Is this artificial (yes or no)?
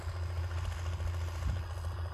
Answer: no